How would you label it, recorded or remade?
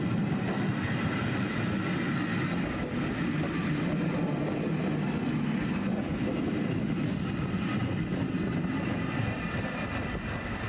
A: recorded